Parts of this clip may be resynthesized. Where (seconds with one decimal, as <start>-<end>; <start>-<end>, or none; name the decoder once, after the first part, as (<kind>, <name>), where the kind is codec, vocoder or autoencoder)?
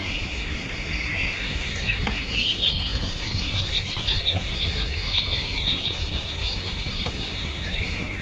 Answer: 0.0-8.2 (codec, SNAC)